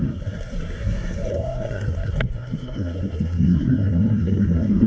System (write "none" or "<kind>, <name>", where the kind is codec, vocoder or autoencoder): codec, SNAC